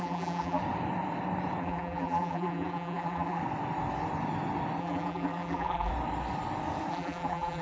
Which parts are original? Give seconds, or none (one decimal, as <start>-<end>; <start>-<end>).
0.6-1.6; 3.4-4.8; 5.9-6.9